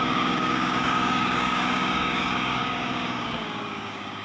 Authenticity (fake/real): fake